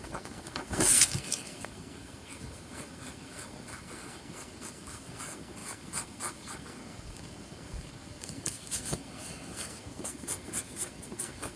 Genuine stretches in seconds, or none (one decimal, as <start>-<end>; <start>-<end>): none